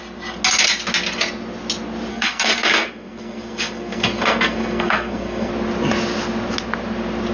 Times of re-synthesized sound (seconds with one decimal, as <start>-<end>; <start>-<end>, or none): 2.1-5.5